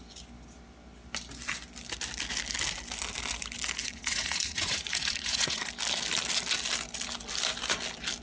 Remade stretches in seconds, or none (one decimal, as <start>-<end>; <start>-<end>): 3.8-5.7